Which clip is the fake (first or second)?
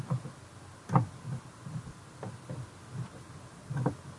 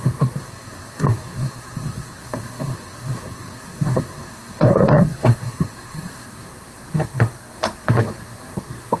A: second